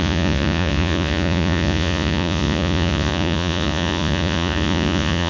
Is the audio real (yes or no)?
no